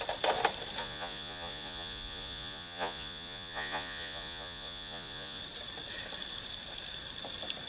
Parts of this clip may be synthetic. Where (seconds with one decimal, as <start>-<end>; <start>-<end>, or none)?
0.8-5.4